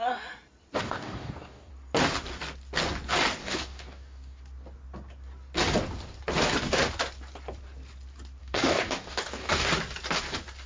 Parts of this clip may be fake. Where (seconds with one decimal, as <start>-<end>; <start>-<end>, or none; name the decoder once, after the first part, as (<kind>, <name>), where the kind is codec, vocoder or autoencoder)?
0.8-1.7 (codec, DAC); 3.4-4.4; 8.4-9.7